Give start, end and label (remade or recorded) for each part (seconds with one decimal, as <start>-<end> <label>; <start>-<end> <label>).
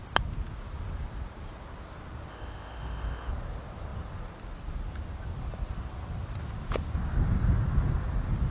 0.0-2.3 recorded; 2.3-3.3 remade; 3.3-8.5 recorded